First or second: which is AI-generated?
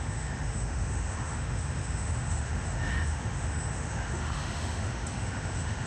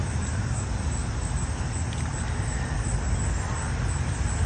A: first